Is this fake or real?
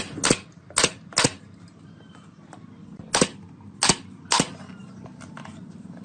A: real